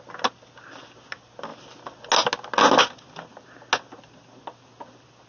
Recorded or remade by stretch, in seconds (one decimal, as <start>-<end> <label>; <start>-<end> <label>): 0.0-5.3 recorded

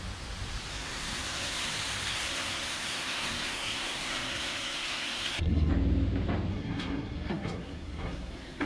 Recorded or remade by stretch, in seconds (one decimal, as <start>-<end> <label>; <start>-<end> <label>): 0.0-0.7 recorded; 0.7-1.7 remade; 1.7-2.1 recorded; 2.1-5.7 remade; 5.7-6.5 recorded; 6.5-8.7 remade

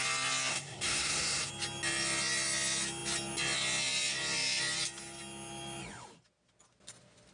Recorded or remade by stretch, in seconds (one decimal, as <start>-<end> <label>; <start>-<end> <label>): 0.0-0.5 recorded; 0.5-1.5 remade; 1.5-7.3 recorded

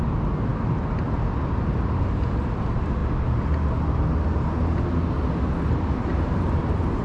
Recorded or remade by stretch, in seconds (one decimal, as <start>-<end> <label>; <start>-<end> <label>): 0.0-7.0 recorded

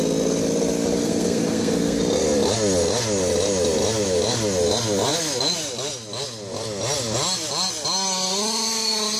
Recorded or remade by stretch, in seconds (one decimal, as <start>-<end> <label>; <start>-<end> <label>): 0.0-1.0 recorded; 1.0-2.0 remade; 2.0-9.2 recorded

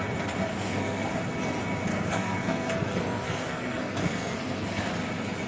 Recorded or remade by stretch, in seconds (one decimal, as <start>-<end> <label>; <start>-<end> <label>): 0.0-0.5 recorded; 0.5-1.1 remade; 1.1-1.9 recorded; 1.9-4.9 remade; 4.9-5.5 recorded